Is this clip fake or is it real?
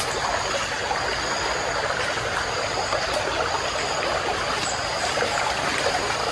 real